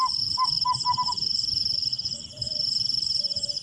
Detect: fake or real fake